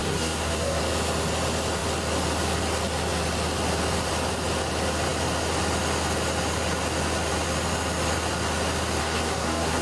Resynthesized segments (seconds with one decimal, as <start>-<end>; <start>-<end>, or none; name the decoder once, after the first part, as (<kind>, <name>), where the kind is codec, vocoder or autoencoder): 0.0-0.8 (codec, SNAC); 9.0-9.8

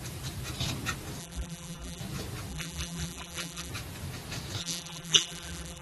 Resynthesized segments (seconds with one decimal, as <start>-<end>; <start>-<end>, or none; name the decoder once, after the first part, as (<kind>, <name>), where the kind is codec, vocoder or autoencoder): 1.2-2.0 (vocoder, BigVGAN v2); 2.5-3.7; 4.6-5.8

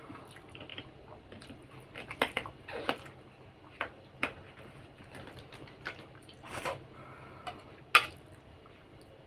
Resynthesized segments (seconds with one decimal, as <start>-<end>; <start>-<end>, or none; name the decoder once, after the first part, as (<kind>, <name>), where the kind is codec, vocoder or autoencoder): 0.7-4.9 (vocoder, BigVGAN v2)

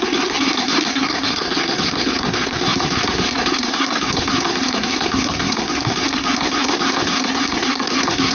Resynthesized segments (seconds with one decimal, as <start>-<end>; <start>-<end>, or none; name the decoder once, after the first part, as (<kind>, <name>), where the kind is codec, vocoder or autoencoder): 0.0-8.3 (codec, SNAC)

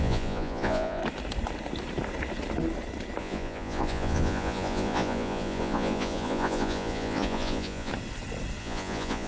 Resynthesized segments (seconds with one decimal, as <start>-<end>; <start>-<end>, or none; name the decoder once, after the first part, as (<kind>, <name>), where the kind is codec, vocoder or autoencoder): 0.0-1.0 (vocoder, Vocos); 3.2-7.9; 8.6-9.3

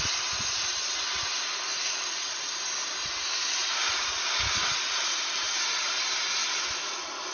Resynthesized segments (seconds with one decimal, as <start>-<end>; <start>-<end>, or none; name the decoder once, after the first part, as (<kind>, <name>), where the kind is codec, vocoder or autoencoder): none